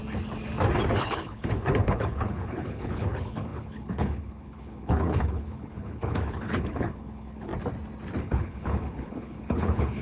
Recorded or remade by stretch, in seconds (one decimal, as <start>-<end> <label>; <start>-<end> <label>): 0.0-1.0 recorded; 1.0-7.5 remade; 7.5-8.2 recorded; 8.2-10.0 remade